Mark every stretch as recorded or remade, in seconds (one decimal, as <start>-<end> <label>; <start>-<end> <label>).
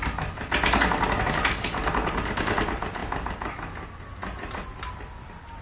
0.0-5.6 recorded